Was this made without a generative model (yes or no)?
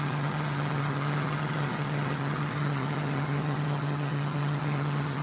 no